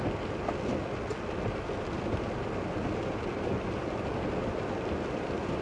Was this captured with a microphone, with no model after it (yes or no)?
yes